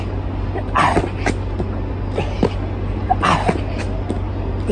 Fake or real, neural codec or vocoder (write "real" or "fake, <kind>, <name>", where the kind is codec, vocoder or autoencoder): real